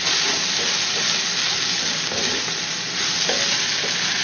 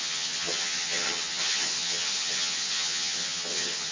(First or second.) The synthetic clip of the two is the second